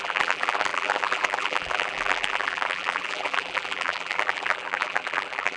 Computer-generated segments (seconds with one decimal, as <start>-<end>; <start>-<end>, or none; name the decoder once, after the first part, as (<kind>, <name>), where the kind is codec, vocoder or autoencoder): 0.0-5.6 (vocoder, BigVGAN v2)